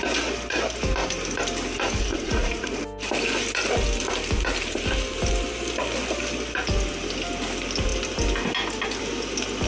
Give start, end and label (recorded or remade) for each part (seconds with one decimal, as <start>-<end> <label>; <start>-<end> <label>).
0.0-2.1 recorded; 2.1-2.8 remade; 2.8-9.7 recorded